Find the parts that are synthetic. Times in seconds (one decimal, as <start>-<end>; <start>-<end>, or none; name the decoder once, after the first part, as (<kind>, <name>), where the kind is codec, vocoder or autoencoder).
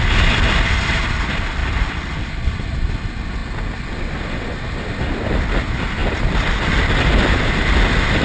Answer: 1.6-2.1 (vocoder, BigVGAN v2); 6.0-7.4